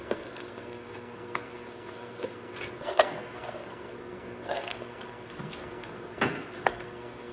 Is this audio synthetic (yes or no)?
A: yes